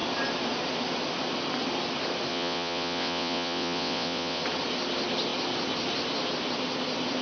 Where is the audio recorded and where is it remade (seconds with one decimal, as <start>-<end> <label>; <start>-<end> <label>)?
0.0-2.3 recorded; 2.3-4.4 remade; 4.4-7.2 recorded